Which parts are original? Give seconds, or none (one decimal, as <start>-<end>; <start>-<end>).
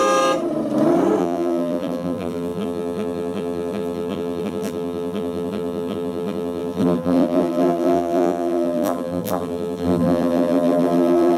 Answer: 0.0-1.2